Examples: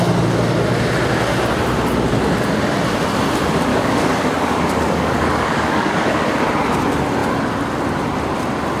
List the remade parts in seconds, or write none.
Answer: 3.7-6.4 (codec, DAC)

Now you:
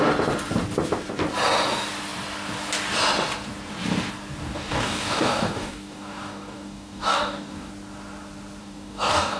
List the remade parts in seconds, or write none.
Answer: 4.4-7.7 (codec, DAC); 8.6-9.4

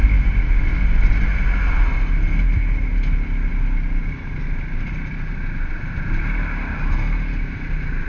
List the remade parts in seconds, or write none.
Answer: none

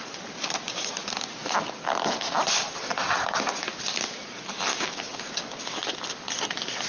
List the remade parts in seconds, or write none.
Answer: 4.7-5.2 (codec, DAC)

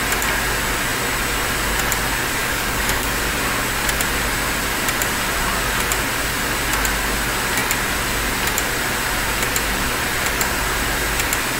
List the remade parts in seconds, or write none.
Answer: 2.4-3.2 (codec, DAC)

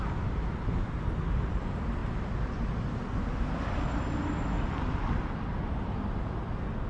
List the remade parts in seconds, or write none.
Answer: none

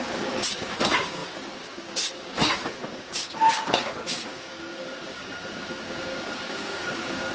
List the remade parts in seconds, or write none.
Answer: 0.0-7.3 (codec, DAC)